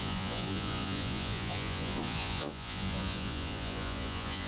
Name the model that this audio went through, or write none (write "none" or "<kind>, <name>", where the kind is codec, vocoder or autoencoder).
vocoder, Vocos